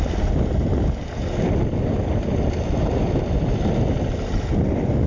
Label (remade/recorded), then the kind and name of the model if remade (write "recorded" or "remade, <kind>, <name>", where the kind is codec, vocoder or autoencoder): recorded